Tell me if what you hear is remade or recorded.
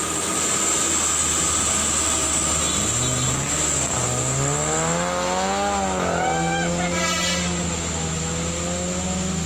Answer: recorded